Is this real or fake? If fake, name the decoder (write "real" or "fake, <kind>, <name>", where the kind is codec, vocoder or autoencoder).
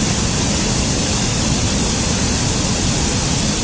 real